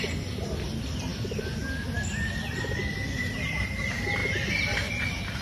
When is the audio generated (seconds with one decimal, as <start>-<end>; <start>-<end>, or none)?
none